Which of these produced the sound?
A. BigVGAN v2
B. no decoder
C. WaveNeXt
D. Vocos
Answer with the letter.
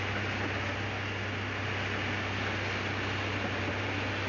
B